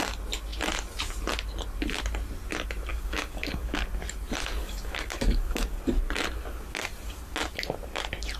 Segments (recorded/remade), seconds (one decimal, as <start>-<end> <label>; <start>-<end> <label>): 0.0-2.9 recorded; 2.9-3.9 remade; 3.9-4.6 recorded; 4.6-5.8 remade; 5.8-8.4 recorded